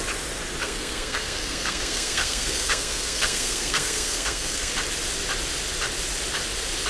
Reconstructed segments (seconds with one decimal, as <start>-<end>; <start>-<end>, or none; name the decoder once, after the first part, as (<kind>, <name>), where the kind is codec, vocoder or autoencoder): 0.6-4.7 (codec, SNAC)

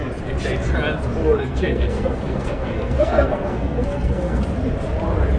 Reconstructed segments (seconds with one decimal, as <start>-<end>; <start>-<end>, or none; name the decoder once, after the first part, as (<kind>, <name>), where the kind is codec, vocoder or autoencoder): 1.2-4.4 (codec, SNAC)

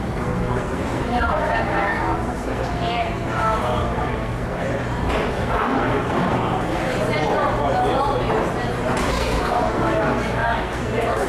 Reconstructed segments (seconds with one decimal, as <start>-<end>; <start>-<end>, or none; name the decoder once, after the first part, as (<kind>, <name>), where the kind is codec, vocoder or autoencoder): 0.0-4.7 (codec, SNAC); 5.3-6.8; 9.1-11.3